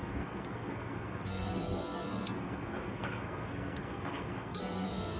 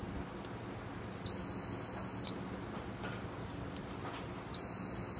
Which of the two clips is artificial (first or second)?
first